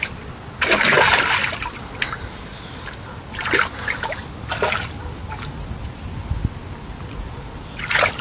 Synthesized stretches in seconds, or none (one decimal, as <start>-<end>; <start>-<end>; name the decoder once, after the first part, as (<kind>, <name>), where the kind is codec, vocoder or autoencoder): none